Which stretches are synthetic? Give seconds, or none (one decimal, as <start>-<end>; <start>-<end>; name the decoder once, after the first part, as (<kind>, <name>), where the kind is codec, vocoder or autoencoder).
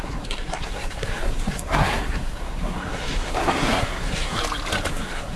0.0-4.4 (codec, SNAC); 4.9-5.4